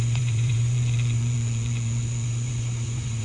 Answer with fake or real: fake